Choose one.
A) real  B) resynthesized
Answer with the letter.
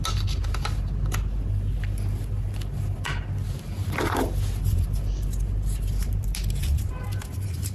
A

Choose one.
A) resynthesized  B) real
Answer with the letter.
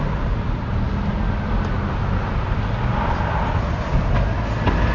B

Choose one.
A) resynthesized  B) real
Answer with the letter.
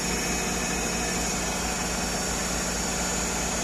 B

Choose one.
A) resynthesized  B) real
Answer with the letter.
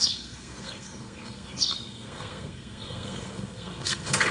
A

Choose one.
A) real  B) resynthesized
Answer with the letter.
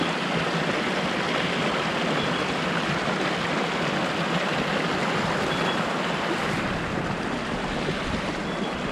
A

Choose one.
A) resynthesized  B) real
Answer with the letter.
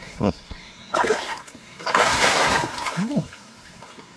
A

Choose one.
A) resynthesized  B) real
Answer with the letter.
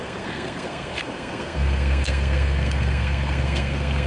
A